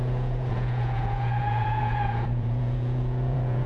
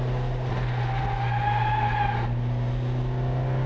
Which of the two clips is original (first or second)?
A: second